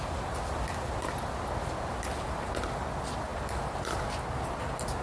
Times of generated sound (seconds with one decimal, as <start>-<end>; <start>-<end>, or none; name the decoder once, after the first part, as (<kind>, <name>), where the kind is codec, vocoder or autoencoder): none